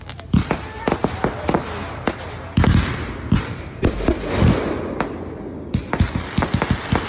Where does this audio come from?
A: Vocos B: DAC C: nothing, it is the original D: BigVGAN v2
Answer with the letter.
C